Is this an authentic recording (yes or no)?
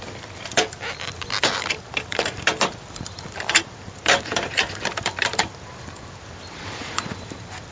no